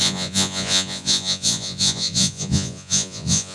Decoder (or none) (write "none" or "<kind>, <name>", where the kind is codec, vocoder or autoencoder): vocoder, Vocos